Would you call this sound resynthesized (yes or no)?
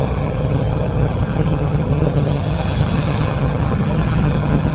yes